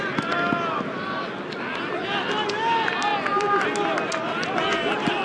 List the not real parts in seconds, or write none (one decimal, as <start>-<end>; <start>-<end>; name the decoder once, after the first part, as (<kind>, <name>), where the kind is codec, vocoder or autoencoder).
none